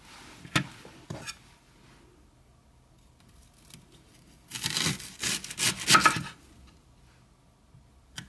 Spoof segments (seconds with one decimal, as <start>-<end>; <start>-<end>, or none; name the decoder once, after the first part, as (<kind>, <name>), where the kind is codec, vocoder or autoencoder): none